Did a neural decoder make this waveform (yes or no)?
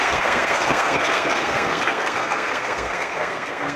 yes